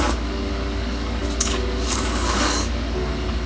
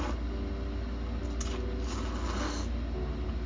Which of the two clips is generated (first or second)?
first